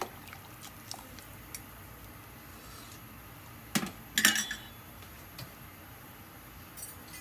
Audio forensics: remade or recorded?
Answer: recorded